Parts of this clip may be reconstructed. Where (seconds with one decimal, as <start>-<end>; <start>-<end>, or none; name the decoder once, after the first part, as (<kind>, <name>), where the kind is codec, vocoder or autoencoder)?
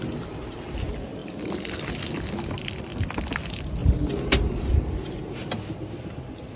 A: 1.2-1.9 (vocoder, BigVGAN v2)